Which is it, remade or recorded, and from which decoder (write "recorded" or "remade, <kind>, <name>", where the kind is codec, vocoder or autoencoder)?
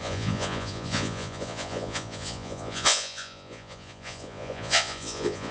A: remade, vocoder, Vocos